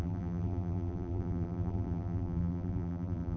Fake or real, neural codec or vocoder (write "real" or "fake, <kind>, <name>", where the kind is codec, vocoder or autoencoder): fake, vocoder, BigVGAN v2